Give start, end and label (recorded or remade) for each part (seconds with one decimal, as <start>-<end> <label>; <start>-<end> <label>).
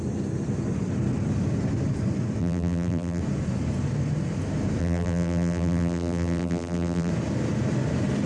0.0-2.4 recorded; 2.4-3.2 remade; 3.2-4.8 recorded; 4.8-7.1 remade; 7.1-8.3 recorded